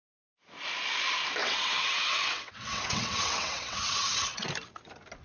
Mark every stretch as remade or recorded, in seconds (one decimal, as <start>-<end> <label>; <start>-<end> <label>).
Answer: 0.0-1.4 recorded; 1.4-4.5 remade; 4.5-5.2 recorded